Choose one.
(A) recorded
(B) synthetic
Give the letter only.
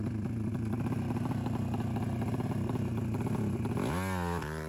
A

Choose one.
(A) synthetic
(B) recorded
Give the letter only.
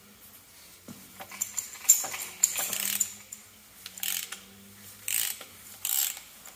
B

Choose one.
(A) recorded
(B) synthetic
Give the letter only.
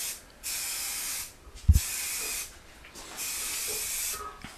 A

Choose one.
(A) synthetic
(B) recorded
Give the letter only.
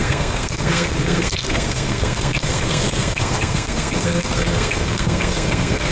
A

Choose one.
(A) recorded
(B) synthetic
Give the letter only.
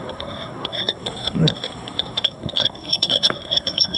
B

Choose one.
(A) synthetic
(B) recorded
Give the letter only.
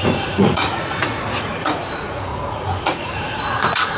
A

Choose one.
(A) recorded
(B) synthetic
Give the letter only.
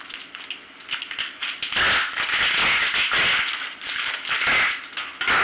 A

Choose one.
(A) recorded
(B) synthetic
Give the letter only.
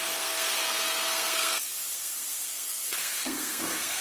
B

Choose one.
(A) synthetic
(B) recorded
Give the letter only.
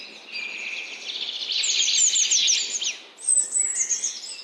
B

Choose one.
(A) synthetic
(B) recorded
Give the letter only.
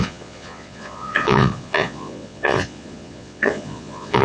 A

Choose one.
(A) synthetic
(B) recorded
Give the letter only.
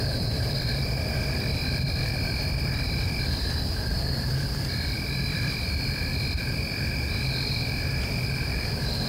A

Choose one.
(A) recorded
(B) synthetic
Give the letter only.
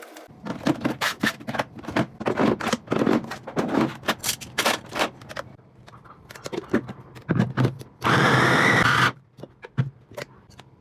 B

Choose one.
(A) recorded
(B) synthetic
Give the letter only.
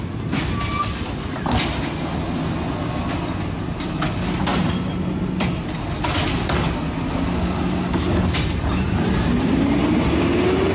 A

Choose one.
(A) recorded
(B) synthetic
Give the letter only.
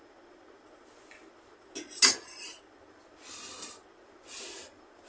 A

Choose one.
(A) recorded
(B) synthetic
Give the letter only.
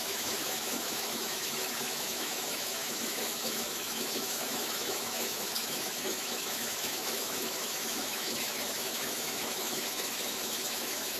B